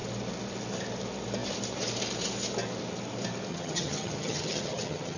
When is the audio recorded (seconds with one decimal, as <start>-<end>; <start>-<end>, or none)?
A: 0.0-3.5